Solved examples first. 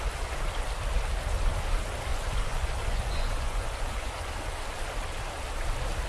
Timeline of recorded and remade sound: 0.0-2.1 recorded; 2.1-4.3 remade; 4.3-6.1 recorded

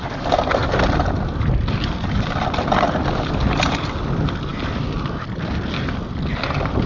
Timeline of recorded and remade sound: 0.0-6.9 recorded

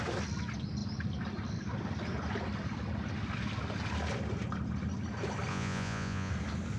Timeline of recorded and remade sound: 0.0-5.5 recorded; 5.5-6.3 remade; 6.3-6.8 recorded

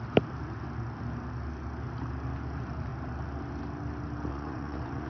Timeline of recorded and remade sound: 0.0-4.3 recorded; 4.3-5.1 remade

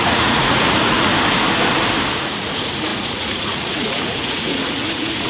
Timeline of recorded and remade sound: 0.0-1.1 remade; 1.1-2.1 recorded; 2.1-5.3 remade

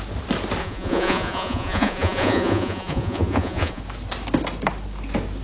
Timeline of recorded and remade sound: 0.0-0.6 recorded; 0.6-3.8 remade; 3.8-5.4 recorded